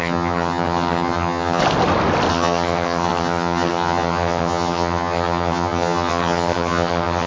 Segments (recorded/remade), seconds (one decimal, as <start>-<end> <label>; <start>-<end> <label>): 0.0-1.6 remade; 1.6-2.3 recorded; 2.3-7.3 remade